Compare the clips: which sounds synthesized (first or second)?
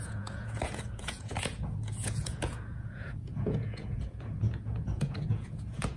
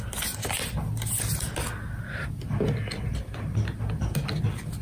first